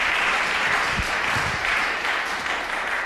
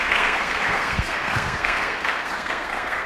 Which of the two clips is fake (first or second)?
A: second